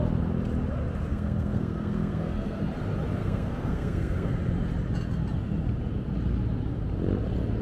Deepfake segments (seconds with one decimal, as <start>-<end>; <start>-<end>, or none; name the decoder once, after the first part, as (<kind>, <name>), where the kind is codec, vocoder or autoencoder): 1.1-2.6 (codec, SNAC); 3.2-4.3